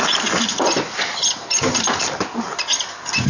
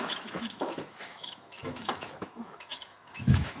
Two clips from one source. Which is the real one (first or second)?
first